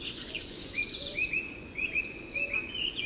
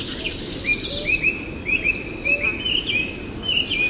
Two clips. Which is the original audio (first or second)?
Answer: second